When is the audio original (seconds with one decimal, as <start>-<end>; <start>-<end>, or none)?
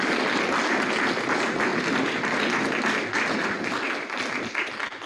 0.0-1.7